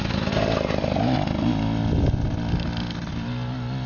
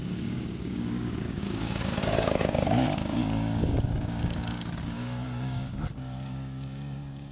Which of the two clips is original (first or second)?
first